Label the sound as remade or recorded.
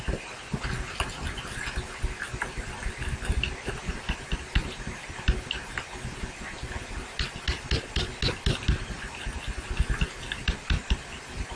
recorded